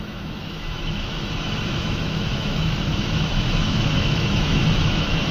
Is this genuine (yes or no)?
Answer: no